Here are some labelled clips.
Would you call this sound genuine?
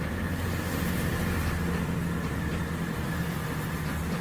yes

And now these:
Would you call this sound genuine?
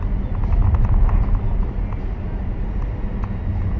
yes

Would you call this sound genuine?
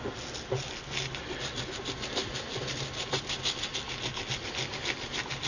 yes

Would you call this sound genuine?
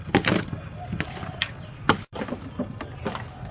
yes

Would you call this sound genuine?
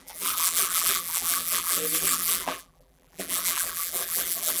no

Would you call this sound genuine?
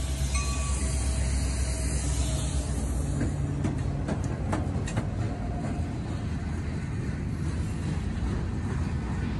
yes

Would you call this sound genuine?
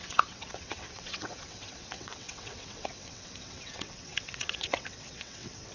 no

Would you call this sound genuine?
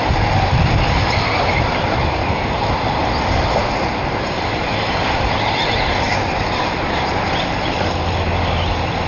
yes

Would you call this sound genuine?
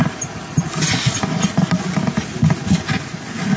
yes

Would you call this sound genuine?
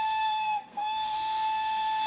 no